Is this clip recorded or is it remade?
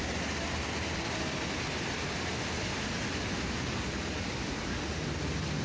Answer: recorded